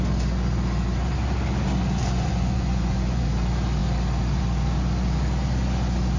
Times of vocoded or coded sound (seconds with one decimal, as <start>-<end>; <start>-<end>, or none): 2.0-3.2

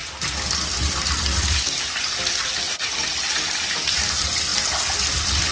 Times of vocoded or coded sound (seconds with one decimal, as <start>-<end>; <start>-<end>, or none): 0.7-3.1; 3.9-4.5; 5.1-5.5

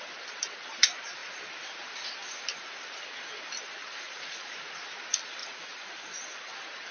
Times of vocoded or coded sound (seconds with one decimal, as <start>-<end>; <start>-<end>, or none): 3.8-4.7; 5.4-6.5

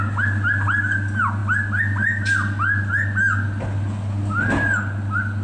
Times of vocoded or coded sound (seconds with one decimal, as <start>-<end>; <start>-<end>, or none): none

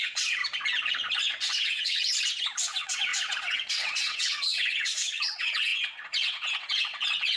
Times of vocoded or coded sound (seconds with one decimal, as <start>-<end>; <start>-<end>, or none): 0.0-0.4; 1.2-2.1; 2.6-7.4

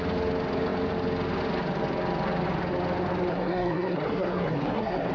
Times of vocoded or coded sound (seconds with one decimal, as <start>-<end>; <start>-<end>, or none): 3.3-5.1

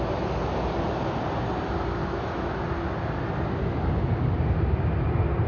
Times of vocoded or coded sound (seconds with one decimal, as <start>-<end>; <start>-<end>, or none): 2.0-2.6